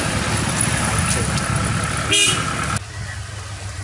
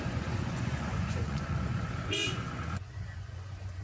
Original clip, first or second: first